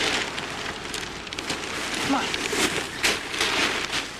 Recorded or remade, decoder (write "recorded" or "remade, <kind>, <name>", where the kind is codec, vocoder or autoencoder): recorded